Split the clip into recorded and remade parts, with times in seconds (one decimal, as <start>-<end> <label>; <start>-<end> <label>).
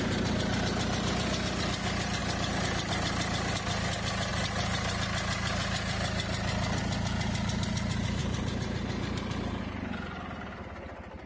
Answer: 0.0-2.2 recorded; 2.2-2.9 remade; 2.9-4.3 recorded; 4.3-4.9 remade; 4.9-8.2 recorded; 8.2-9.6 remade; 9.6-11.3 recorded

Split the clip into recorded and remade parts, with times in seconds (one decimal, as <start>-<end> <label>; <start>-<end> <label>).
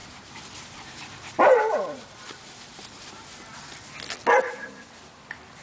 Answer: 0.0-3.3 remade; 3.3-5.6 recorded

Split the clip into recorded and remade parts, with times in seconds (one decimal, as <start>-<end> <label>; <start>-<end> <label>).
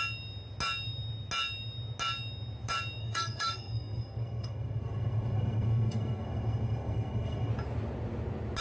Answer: 0.0-3.0 recorded; 3.0-7.5 remade; 7.5-8.6 recorded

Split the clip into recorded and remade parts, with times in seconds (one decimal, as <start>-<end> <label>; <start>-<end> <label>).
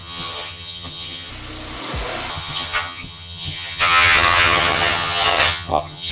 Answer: 0.0-1.3 remade; 1.3-2.3 recorded; 2.3-6.1 remade